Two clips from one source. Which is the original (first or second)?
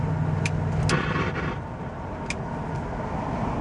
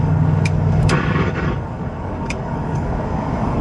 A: first